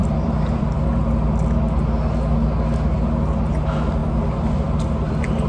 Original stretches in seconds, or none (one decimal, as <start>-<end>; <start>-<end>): 0.9-5.5

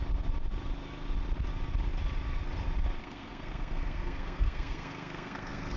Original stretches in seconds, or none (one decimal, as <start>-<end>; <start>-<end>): 0.0-3.0

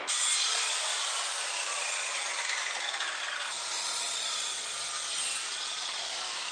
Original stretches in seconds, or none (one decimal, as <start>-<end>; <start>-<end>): 0.0-1.7; 2.4-3.8; 4.9-6.5

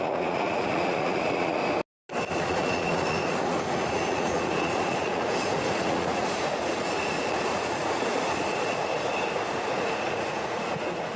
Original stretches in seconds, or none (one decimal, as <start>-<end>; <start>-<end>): 1.6-2.3; 8.9-9.7

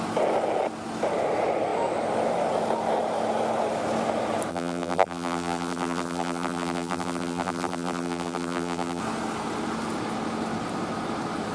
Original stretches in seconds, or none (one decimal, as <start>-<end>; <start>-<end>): 0.0-4.5; 9.0-11.5